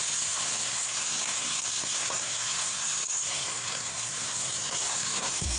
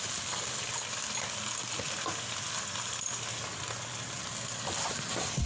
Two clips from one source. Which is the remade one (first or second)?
first